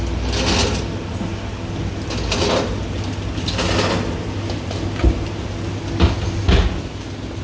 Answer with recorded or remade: recorded